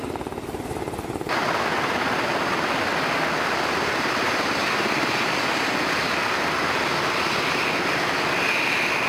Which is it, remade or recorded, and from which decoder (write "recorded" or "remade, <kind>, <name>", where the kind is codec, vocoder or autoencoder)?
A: recorded